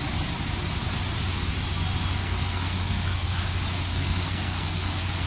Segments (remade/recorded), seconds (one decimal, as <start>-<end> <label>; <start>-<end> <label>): 0.0-2.2 recorded; 2.2-3.4 remade; 3.4-3.9 recorded; 3.9-5.3 remade